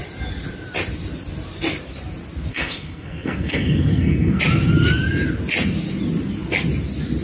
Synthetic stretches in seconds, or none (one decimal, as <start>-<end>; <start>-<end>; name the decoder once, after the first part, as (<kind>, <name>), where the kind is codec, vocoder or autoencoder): 2.5-4.4 (codec, SNAC)